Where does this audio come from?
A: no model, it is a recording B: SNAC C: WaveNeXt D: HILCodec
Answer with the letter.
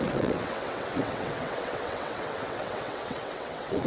C